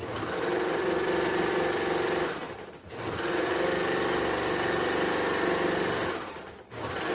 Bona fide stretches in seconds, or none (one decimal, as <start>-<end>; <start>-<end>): 0.0-7.1